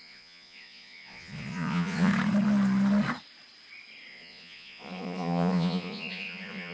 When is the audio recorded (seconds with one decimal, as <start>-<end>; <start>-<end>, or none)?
2.1-4.1